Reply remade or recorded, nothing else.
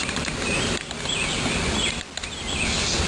recorded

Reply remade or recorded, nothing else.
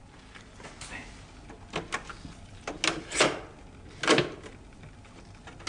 recorded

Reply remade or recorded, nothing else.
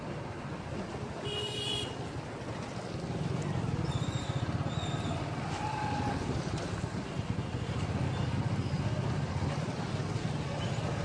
recorded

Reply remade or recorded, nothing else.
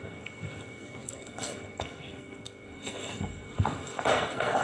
remade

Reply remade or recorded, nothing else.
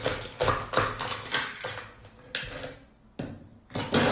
recorded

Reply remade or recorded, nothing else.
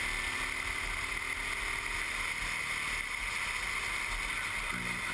recorded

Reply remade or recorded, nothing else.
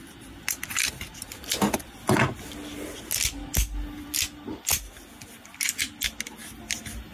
recorded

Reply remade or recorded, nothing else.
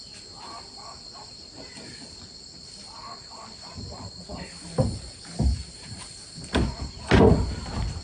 recorded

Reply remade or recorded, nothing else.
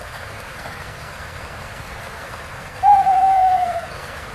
remade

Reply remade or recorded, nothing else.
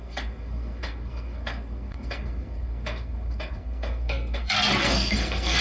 remade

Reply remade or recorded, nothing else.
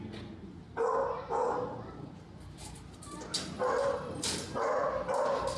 recorded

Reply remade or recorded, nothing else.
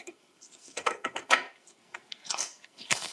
remade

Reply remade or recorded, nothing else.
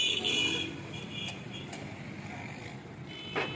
recorded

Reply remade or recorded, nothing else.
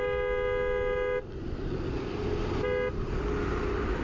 recorded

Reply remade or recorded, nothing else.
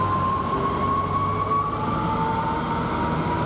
recorded